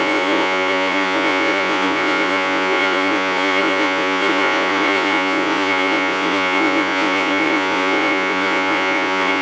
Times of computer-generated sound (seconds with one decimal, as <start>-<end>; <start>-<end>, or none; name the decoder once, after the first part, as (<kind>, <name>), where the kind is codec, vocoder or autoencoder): 0.0-9.4 (vocoder, Vocos)